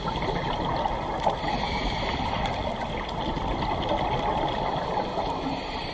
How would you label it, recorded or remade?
recorded